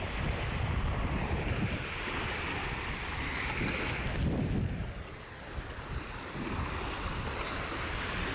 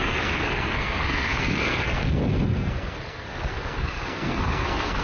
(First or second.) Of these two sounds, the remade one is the second